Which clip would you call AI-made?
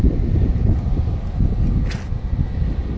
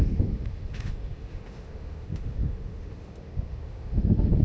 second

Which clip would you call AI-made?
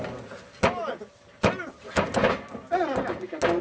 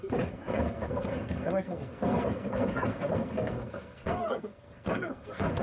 second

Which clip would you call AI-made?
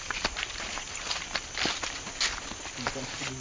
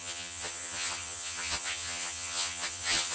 second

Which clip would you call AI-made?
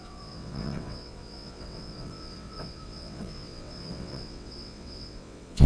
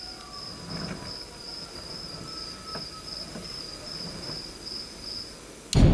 first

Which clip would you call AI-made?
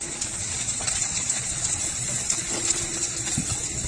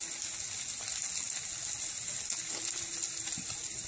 first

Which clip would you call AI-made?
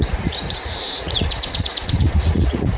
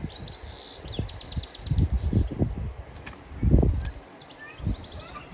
first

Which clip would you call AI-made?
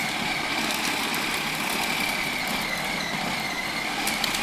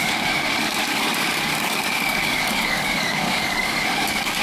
second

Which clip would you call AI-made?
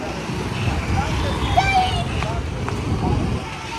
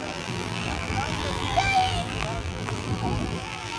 second